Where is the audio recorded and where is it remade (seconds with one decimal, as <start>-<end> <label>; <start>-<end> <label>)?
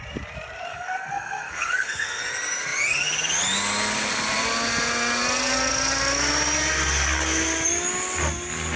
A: 0.0-0.7 recorded; 0.7-2.2 remade; 2.2-8.8 recorded